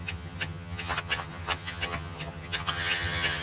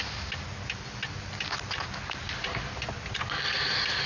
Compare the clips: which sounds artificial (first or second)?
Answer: first